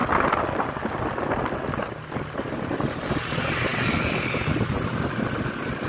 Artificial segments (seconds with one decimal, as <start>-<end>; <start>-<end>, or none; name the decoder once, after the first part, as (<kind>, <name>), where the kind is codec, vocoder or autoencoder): none